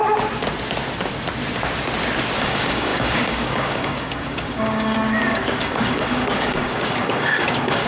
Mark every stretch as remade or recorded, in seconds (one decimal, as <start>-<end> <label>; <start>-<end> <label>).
0.0-2.4 recorded; 2.4-7.9 remade